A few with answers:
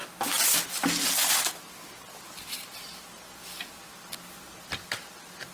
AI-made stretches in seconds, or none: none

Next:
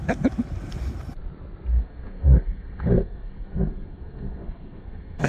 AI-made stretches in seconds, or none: 1.7-5.3 (codec, SNAC)

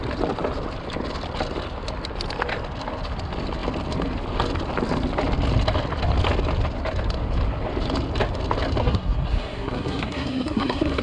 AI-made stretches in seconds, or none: 8.8-11.0 (codec, SNAC)

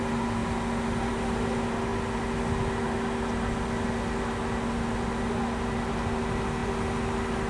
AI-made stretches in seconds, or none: none

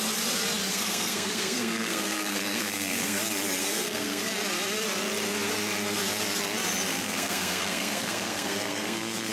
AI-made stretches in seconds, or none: 0.7-3.2 (codec, SNAC); 3.6-4.3; 6.9-9.3

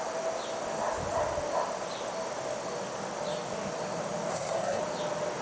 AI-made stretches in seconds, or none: 4.3-4.8 (codec, SNAC)